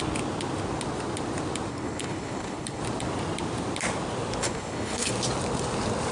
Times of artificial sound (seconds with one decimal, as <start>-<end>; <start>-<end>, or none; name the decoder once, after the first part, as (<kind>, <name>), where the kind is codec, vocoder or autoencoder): 1.7-2.8 (codec, HILCodec); 4.4-5.1